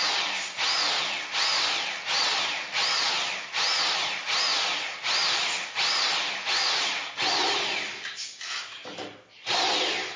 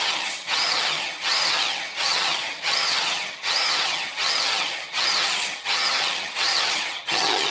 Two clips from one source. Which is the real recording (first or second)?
first